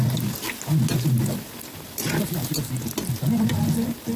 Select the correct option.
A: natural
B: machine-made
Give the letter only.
A